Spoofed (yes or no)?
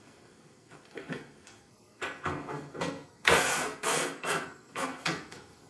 yes